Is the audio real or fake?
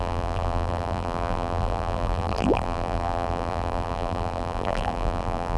fake